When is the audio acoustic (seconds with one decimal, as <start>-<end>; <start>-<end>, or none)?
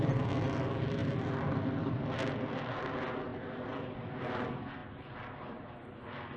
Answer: 0.0-6.4